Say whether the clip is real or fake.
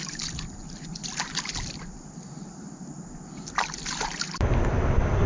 real